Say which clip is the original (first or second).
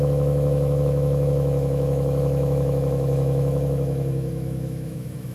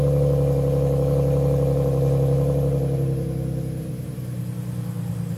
second